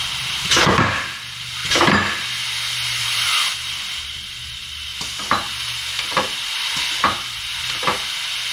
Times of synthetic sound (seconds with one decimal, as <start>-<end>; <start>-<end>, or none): 0.0-1.6; 3.0-4.9; 7.0-8.5